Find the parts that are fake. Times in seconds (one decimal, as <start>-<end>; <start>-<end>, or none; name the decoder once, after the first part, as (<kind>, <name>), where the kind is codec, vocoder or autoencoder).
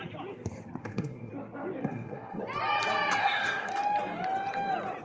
0.8-1.3 (codec, SNAC); 1.8-2.4; 3.2-3.7